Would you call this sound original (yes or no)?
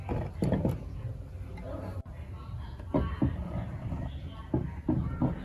yes